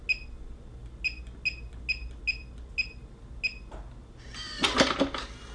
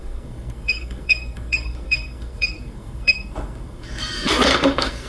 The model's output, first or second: second